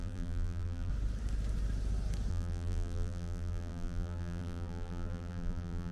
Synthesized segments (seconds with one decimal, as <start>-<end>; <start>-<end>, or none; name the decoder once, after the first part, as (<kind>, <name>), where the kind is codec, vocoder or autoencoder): 0.0-0.9 (vocoder, BigVGAN v2); 2.3-5.9

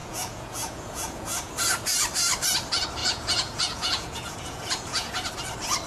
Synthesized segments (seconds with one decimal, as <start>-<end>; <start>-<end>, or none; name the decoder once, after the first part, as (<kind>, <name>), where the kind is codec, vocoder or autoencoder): 0.0-1.5 (vocoder, Vocos); 3.0-5.1

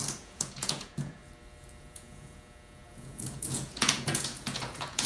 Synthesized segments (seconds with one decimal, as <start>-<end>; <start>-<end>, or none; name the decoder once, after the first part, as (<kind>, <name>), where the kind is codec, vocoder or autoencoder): 0.0-1.2 (vocoder, Vocos); 1.8-5.1

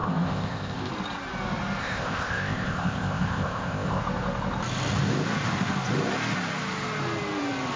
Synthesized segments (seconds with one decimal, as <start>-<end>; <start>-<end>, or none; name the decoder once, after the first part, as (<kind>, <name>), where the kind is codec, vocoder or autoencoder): 0.0-0.9 (codec, ZipCodec); 1.8-4.0

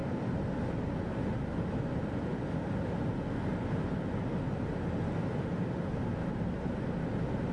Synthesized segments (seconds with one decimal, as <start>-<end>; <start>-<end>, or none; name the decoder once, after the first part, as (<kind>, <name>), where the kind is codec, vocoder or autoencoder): none

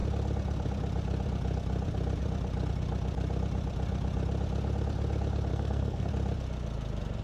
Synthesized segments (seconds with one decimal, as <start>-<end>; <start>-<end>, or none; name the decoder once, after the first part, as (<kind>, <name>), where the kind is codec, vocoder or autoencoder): 5.5-6.1 (codec, SNAC)